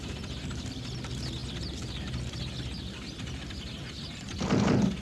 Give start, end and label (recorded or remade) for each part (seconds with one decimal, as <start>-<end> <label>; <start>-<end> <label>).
0.0-5.0 recorded